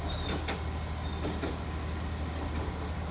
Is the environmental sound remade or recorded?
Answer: recorded